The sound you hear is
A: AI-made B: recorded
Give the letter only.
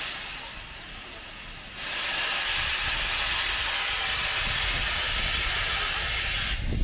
B